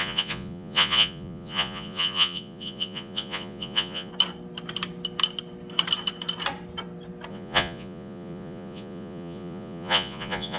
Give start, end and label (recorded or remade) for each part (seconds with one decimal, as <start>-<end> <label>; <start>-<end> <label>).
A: 0.0-4.1 remade; 4.1-7.3 recorded; 7.3-10.6 remade